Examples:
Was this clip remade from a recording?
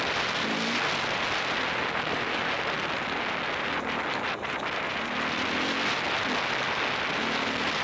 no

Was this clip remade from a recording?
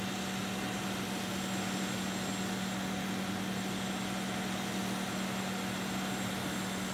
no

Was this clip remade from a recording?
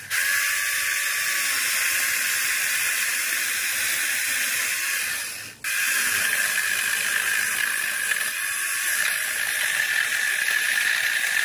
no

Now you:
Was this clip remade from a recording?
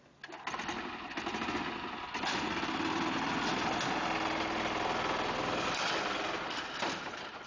no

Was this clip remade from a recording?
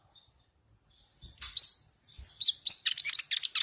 no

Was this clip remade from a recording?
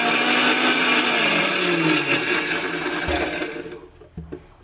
no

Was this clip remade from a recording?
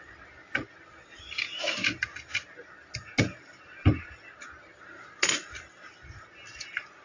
no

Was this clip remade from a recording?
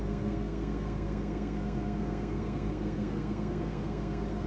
yes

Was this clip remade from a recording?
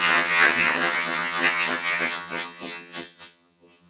yes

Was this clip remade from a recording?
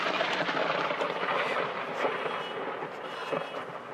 no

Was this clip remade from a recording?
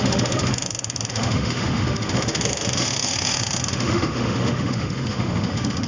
yes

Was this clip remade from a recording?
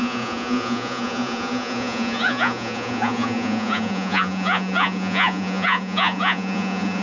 yes